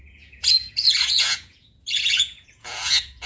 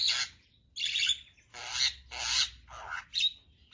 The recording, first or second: second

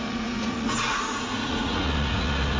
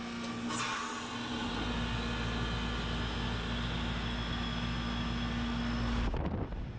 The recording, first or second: second